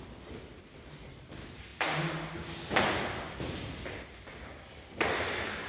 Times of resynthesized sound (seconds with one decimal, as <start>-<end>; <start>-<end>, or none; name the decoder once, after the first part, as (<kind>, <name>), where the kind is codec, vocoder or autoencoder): none